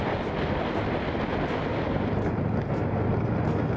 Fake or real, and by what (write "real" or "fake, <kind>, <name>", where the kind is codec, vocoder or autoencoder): real